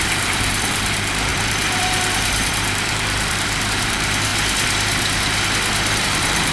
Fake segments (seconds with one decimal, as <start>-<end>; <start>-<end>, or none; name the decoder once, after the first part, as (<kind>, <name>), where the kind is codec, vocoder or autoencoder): 0.0-4.3 (vocoder, BigVGAN v2); 6.0-6.5